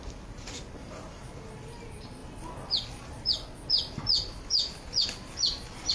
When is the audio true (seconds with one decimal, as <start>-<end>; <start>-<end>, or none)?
0.0-5.9